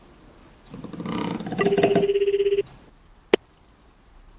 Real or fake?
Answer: real